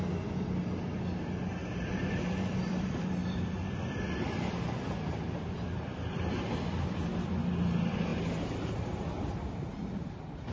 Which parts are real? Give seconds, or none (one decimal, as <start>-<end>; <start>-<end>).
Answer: 0.0-1.6; 6.3-10.5